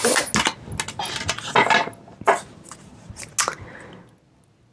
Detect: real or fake real